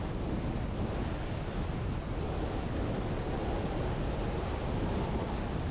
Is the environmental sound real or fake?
real